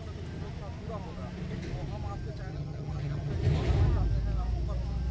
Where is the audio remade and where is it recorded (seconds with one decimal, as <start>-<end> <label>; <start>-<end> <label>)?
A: 0.0-2.5 recorded; 2.5-3.3 remade; 3.3-5.1 recorded